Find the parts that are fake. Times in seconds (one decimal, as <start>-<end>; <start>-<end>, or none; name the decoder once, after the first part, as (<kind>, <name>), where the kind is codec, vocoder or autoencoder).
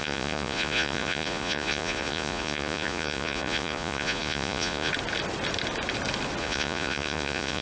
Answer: 0.0-4.9 (vocoder, Vocos); 6.4-7.6